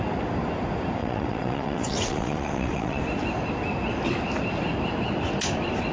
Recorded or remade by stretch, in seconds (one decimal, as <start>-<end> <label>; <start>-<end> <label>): 0.0-1.0 recorded; 1.0-3.0 remade; 3.0-5.9 recorded